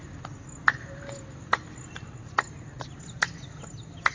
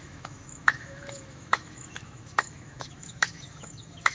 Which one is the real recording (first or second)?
first